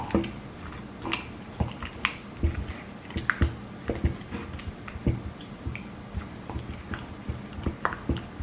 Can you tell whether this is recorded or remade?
recorded